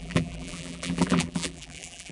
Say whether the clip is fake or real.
fake